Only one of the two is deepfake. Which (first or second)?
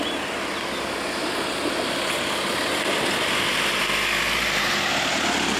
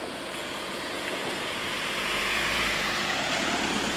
second